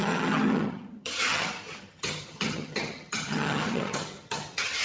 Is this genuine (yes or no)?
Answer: no